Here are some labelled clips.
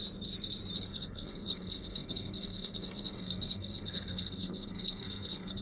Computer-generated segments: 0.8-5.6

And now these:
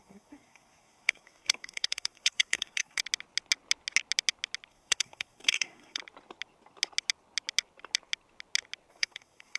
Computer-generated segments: 0.0-3.0; 4.7-6.0; 8.9-9.6

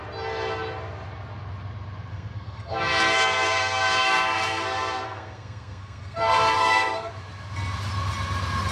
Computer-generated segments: 2.1-7.1

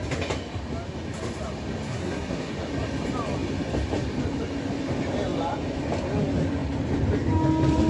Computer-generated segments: 1.9-2.5

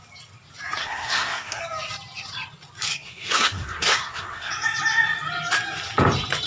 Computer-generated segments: 0.8-1.6; 2.9-4.5

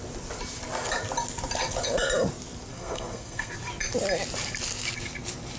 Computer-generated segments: 2.7-3.5

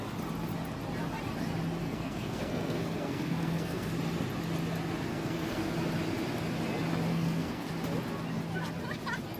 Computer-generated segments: 1.8-3.9; 5.1-5.7; 7.1-7.7